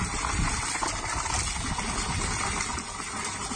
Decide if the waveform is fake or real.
real